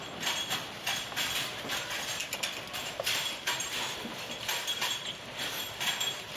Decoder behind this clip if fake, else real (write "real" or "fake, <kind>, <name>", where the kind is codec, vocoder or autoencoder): fake, vocoder, BigVGAN v2